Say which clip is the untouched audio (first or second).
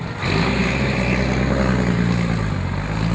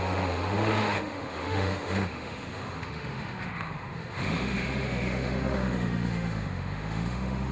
first